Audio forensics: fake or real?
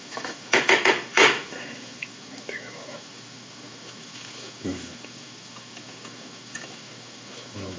fake